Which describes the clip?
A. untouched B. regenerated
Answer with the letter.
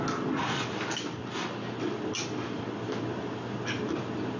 A